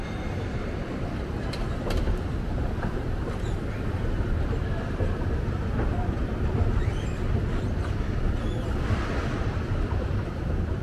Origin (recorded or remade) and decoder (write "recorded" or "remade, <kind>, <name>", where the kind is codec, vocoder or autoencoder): remade, vocoder, BigVGAN v2